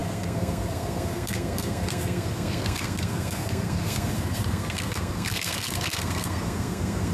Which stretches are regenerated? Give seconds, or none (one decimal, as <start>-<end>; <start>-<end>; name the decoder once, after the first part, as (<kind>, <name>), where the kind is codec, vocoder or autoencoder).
0.0-7.1 (codec, SNAC)

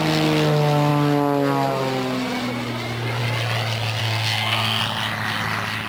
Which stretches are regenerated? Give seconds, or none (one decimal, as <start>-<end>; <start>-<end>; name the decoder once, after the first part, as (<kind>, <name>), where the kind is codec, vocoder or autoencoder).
4.0-4.8 (codec, SNAC)

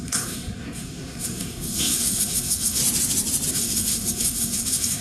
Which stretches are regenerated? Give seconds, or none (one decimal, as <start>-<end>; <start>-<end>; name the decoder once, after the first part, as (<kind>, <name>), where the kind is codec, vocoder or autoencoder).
0.0-2.8 (codec, SNAC); 3.5-5.0